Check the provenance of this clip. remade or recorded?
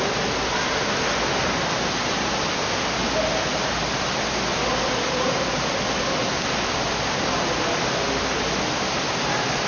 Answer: recorded